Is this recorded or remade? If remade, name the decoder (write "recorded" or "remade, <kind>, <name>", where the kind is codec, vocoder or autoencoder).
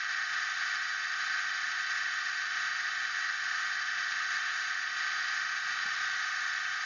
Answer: recorded